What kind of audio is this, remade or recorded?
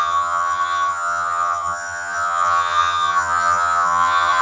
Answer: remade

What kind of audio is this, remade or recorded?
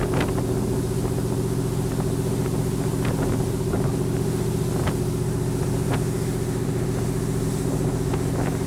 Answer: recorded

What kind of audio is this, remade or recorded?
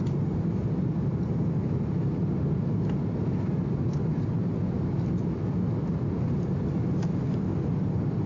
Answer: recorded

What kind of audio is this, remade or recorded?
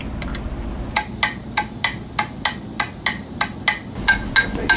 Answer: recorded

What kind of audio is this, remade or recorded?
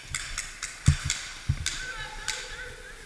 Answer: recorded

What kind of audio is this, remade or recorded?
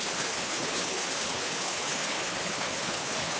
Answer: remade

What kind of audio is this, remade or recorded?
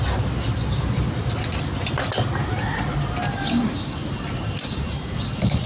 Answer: recorded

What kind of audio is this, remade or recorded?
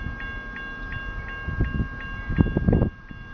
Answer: recorded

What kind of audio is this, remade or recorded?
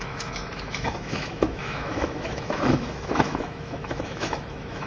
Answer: remade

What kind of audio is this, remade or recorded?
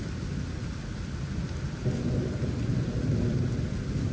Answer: recorded